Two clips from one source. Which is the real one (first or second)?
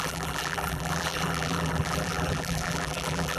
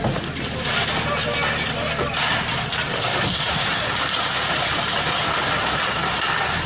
second